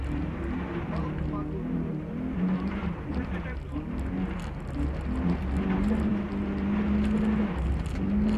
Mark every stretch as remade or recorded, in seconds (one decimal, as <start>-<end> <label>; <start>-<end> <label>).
0.0-1.9 recorded; 1.9-3.4 remade; 3.4-8.4 recorded